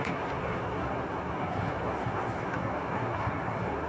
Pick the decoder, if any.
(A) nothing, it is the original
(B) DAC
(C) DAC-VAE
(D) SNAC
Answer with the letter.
D